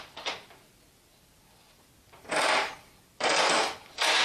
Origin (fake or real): fake